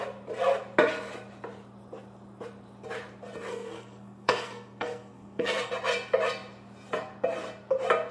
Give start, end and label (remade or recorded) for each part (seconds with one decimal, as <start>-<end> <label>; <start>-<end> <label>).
0.0-3.5 recorded; 3.5-5.7 remade; 5.7-8.1 recorded